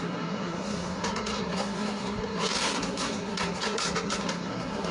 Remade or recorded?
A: remade